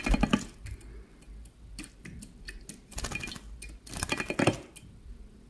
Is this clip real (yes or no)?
yes